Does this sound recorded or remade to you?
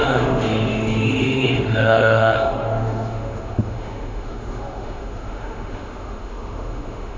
remade